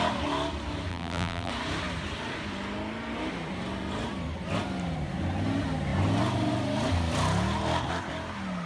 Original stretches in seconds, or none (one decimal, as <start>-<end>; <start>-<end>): 0.0-0.9; 1.5-8.7